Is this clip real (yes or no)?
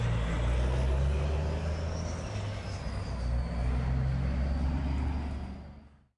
yes